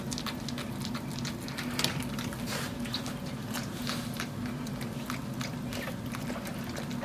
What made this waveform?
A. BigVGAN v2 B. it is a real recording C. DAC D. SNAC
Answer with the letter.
B